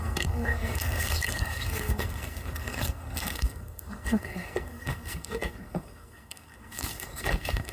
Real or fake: fake